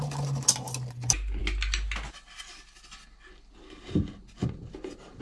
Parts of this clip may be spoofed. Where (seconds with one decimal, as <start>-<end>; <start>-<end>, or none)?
none